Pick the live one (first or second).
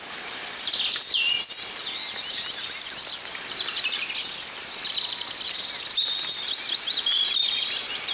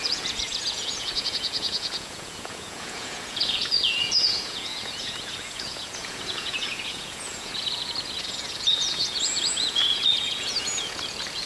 first